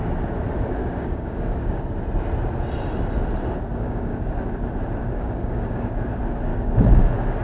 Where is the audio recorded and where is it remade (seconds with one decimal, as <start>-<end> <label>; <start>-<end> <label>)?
0.0-0.8 recorded; 0.8-1.8 remade; 1.8-3.7 recorded; 3.7-4.4 remade; 4.4-5.0 recorded; 5.0-5.9 remade; 5.9-6.5 recorded; 6.5-7.4 remade